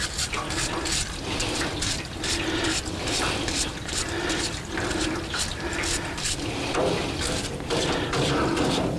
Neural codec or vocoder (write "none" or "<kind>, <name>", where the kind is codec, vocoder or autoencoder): none